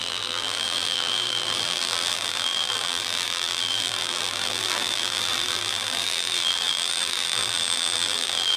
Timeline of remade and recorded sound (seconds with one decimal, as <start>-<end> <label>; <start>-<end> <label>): 0.0-8.6 remade